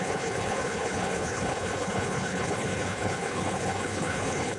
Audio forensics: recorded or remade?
remade